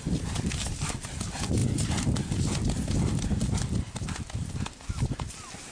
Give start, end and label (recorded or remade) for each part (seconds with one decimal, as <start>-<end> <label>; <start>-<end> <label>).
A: 0.0-5.7 recorded